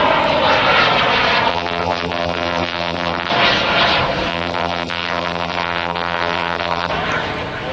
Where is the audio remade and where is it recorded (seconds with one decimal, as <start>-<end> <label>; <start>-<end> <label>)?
0.0-1.5 recorded; 1.5-3.3 remade; 3.3-4.3 recorded; 4.3-6.9 remade; 6.9-7.7 recorded